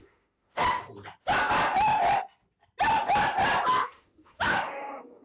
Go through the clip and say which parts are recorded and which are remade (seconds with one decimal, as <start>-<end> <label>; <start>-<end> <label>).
0.0-0.6 remade; 0.6-3.7 recorded; 3.7-5.2 remade